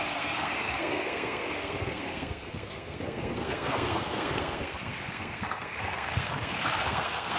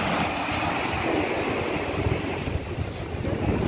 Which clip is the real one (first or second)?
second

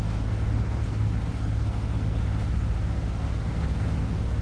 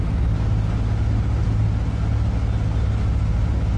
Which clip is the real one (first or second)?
second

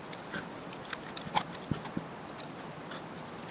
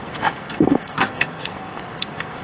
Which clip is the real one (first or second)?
first